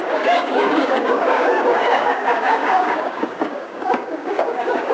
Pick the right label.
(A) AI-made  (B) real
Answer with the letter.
A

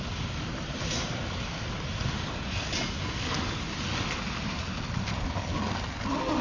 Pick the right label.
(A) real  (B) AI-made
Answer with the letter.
A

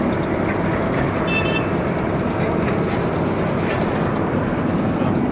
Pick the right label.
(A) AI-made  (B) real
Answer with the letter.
B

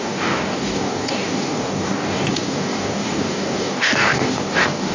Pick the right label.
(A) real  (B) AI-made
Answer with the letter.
B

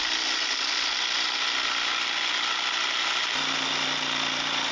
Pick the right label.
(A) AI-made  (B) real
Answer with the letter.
B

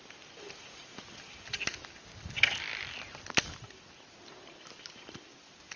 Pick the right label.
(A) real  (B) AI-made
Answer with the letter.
A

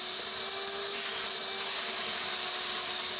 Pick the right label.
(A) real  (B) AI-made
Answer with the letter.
A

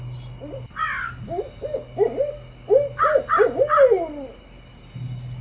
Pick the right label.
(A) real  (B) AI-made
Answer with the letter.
A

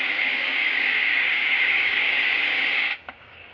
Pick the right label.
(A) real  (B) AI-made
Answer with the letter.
B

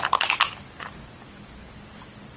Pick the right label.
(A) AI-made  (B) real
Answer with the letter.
B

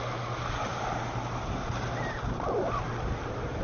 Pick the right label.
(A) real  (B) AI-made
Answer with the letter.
A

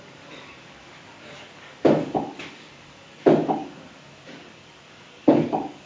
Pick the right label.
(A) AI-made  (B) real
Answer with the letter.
A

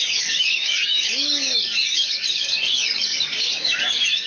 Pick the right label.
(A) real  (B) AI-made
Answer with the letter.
B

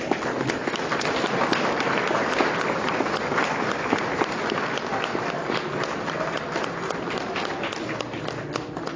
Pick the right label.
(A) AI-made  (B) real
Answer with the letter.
B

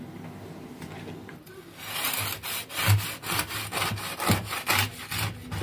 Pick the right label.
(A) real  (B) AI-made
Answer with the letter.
A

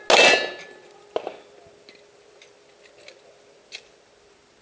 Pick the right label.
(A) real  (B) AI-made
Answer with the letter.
A